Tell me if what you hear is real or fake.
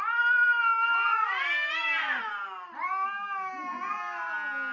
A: real